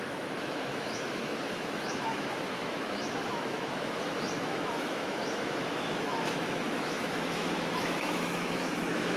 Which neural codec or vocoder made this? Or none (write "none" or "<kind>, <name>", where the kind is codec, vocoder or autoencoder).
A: autoencoder, DAC-VAE